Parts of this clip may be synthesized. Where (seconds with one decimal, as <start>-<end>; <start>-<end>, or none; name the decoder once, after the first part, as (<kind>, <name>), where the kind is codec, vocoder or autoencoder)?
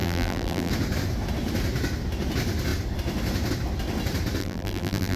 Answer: 0.0-0.7 (vocoder, BigVGAN v2); 4.4-5.2